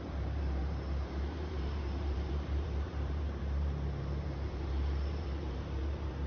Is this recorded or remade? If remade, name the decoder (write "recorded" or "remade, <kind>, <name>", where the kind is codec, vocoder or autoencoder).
remade, vocoder, BigVGAN v2